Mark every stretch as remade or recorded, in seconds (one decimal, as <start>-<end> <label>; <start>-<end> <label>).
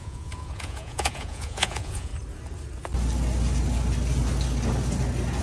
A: 0.0-2.1 remade; 2.1-5.4 recorded